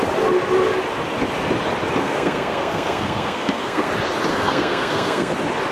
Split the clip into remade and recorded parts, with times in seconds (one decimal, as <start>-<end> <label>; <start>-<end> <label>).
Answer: 0.0-2.0 recorded; 2.0-3.9 remade; 3.9-4.3 recorded; 4.3-5.3 remade; 5.3-5.7 recorded

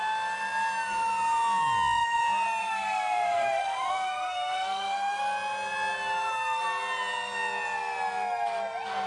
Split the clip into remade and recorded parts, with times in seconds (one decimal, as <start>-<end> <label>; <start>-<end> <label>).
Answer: 0.0-2.6 recorded; 2.6-5.2 remade; 5.2-9.1 recorded

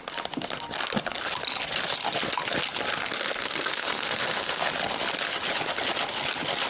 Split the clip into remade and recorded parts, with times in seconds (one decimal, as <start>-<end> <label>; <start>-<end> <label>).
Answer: 0.0-3.4 recorded; 3.4-4.7 remade; 4.7-6.7 recorded

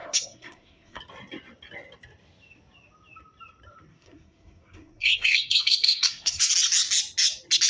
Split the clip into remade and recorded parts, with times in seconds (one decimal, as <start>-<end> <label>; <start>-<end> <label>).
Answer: 0.0-1.0 remade; 1.0-3.9 recorded; 3.9-6.5 remade; 6.5-7.7 recorded

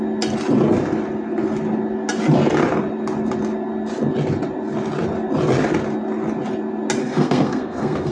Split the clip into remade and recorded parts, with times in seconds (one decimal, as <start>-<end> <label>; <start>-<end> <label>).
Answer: 0.0-7.0 recorded; 7.0-8.1 remade

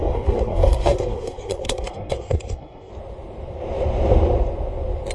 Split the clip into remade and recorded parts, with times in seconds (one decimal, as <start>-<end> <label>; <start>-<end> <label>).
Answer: 0.0-2.9 remade; 2.9-5.1 recorded

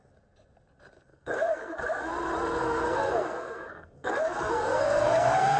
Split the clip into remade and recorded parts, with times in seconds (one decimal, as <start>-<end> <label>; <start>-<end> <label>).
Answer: 0.0-1.1 recorded; 1.1-2.1 remade; 2.1-2.6 recorded; 2.6-5.6 remade